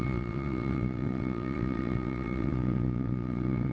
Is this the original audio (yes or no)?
no